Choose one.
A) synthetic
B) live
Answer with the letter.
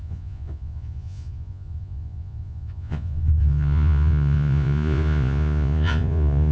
A